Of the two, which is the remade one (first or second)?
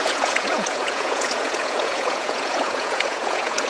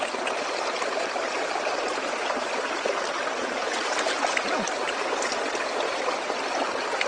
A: first